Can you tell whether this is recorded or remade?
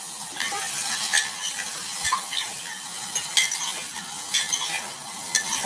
recorded